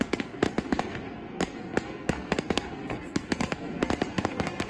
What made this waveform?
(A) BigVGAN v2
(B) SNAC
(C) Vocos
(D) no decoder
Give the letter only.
B